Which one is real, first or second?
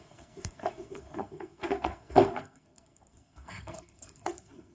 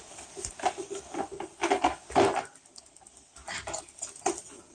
second